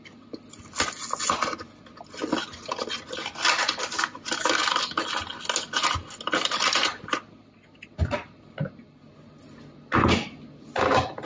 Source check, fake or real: real